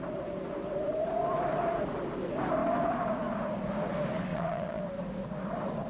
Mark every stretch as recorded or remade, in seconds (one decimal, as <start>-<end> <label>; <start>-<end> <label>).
0.0-4.3 recorded; 4.3-4.8 remade; 4.8-5.9 recorded